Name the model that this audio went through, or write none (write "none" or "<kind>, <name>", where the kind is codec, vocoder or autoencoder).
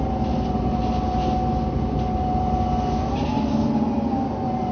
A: none